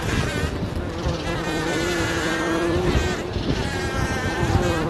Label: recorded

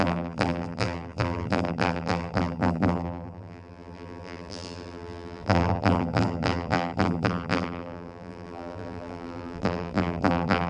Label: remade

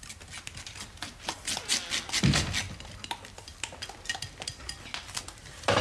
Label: recorded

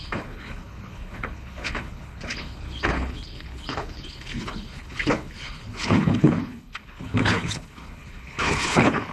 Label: remade